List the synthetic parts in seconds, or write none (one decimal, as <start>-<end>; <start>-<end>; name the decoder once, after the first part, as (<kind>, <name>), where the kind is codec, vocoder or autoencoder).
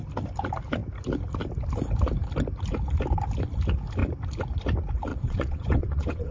5.1-6.3 (vocoder, WaveNeXt)